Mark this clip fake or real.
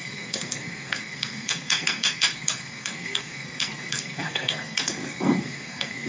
fake